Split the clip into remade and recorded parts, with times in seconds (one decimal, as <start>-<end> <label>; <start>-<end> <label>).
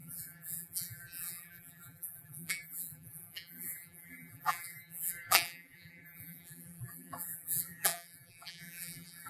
0.0-9.3 remade